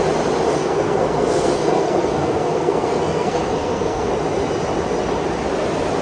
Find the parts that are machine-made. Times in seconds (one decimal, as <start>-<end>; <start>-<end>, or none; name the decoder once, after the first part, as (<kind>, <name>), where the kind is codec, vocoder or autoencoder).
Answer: 0.5-4.1 (codec, SNAC)